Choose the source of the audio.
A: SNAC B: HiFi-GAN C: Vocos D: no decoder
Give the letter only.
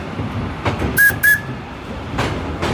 D